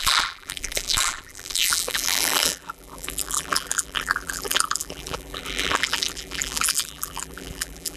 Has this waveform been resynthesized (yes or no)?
yes